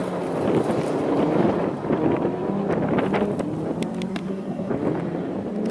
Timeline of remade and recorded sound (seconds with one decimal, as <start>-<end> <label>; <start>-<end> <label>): 0.0-4.1 recorded; 4.1-4.7 remade; 4.7-5.7 recorded